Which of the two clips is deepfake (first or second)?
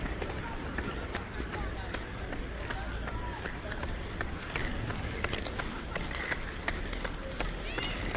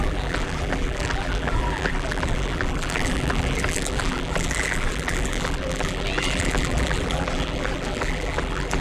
second